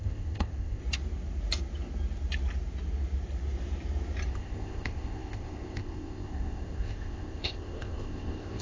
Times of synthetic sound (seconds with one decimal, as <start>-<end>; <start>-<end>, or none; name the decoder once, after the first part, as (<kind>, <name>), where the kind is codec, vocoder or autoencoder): 0.0-0.8 (codec, ZipCodec); 4.3-8.6